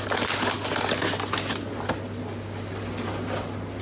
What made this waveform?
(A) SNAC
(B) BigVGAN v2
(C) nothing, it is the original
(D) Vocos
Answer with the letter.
C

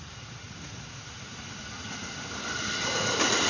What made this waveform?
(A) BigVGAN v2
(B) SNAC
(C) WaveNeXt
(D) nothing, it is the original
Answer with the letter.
D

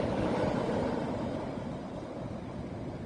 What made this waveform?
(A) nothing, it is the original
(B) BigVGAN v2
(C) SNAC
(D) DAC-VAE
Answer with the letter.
A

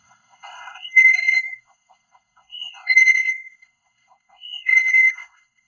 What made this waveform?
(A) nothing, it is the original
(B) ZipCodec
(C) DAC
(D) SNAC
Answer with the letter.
D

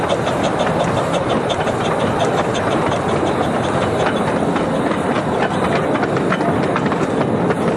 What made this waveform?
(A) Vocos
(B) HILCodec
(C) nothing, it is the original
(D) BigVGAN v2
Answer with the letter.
D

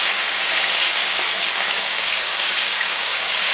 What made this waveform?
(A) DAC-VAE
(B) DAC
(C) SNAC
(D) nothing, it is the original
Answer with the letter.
B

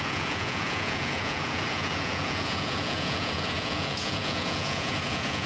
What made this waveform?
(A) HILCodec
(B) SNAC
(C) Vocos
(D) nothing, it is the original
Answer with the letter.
C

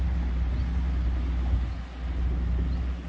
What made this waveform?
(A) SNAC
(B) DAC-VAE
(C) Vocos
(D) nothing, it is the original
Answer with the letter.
D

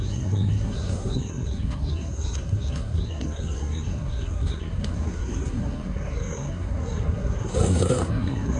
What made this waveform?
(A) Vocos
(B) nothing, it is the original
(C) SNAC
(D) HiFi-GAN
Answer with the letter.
C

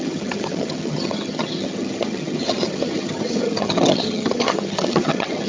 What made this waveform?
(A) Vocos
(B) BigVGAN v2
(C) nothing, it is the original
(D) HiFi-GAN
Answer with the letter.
D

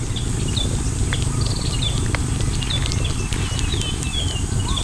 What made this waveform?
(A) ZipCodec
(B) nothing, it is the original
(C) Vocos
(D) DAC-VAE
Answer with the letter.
B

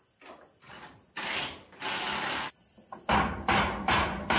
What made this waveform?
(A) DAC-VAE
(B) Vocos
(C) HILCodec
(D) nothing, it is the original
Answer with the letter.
D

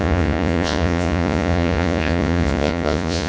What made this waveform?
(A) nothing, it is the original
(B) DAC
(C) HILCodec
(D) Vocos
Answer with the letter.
D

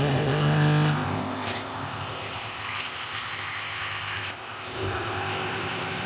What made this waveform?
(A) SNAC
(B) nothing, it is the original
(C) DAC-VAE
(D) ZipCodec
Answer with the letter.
D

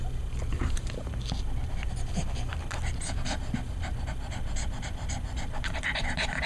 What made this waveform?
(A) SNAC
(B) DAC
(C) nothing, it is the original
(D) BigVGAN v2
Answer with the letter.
C